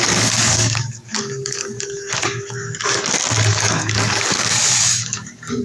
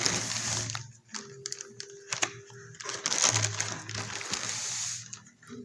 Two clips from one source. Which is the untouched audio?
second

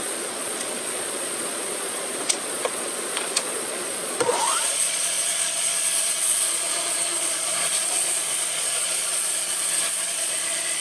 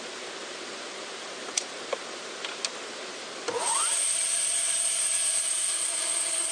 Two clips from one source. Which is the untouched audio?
second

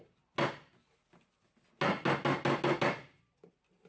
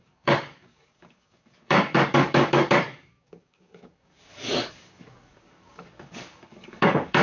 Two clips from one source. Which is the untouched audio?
first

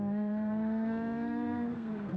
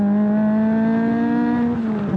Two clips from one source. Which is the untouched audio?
second